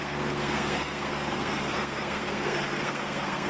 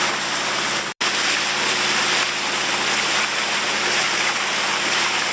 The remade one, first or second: first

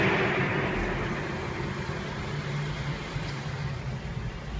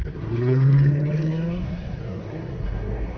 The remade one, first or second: second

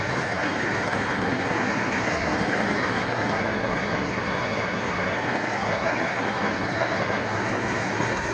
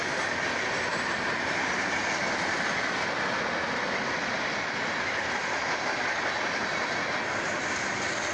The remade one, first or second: first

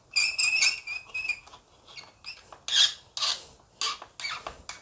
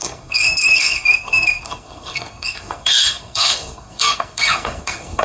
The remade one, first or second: second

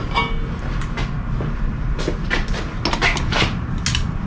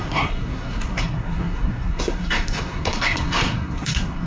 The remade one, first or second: second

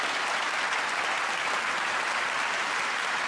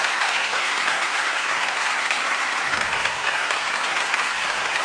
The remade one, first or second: second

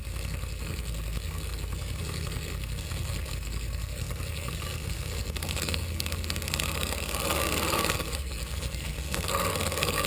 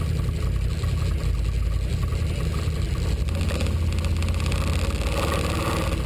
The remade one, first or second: first